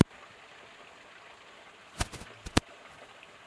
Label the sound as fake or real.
real